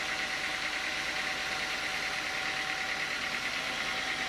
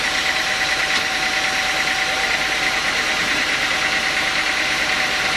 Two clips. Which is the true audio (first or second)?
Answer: first